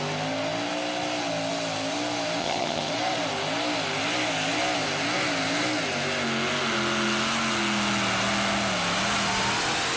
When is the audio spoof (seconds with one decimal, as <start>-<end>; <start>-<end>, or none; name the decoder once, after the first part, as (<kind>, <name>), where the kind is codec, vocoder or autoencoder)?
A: 2.4-2.9 (vocoder, HiFi-GAN)